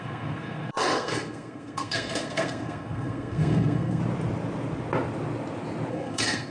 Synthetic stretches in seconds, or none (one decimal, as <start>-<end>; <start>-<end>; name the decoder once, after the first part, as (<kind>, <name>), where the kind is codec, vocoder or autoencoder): 0.0-4.0 (codec, SNAC); 5.9-6.5